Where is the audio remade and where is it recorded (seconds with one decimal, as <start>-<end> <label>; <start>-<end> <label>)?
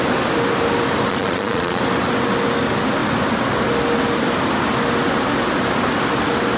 0.0-1.1 recorded; 1.1-1.8 remade; 1.8-6.6 recorded